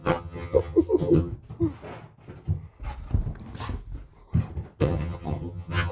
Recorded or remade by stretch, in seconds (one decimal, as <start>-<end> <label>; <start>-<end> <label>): 0.0-1.3 remade; 1.3-4.8 recorded; 4.8-5.9 remade